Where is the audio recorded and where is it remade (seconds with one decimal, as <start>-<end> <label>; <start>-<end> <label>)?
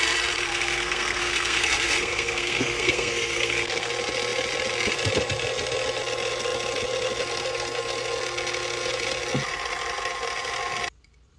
0.0-0.5 recorded; 0.5-3.9 remade; 3.9-11.4 recorded